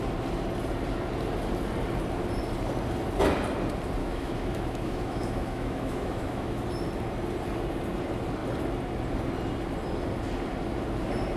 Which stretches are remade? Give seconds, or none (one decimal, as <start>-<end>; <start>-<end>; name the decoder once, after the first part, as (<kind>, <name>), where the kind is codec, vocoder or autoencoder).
4.0-6.6 (autoencoder, DAC-VAE)